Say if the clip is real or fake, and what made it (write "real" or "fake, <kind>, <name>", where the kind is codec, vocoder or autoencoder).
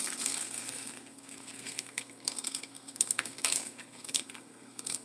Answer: fake, codec, SNAC